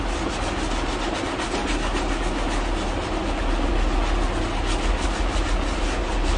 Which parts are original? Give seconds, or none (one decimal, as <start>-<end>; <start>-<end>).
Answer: 0.0-5.7